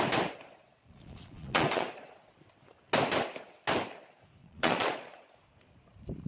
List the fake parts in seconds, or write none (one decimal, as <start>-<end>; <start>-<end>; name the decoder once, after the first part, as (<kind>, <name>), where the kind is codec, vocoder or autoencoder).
0.6-2.2 (vocoder, Vocos); 4.4-5.4